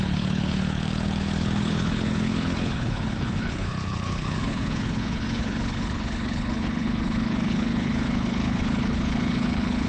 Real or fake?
fake